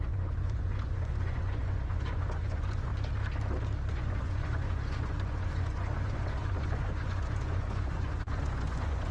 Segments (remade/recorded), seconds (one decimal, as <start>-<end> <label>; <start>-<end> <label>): 0.0-2.9 remade; 2.9-3.9 recorded; 3.9-9.1 remade